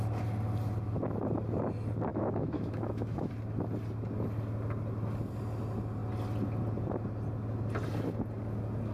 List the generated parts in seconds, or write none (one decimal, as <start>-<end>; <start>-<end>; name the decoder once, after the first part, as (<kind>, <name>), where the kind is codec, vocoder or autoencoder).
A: 2.1-3.3 (autoencoder, DAC-VAE)